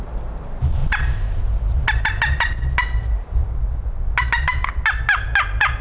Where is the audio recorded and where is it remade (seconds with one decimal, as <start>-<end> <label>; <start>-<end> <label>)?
0.0-5.8 recorded